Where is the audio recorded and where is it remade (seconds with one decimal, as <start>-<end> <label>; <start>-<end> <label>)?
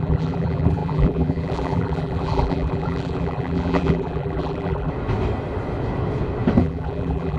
0.0-4.9 remade; 4.9-6.6 recorded; 6.6-7.4 remade